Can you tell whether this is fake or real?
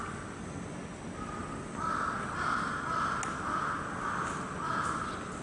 real